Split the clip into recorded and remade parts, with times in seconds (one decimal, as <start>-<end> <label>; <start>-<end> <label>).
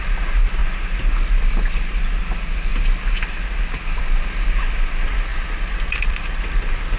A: 0.0-5.3 recorded; 5.3-6.4 remade; 6.4-7.0 recorded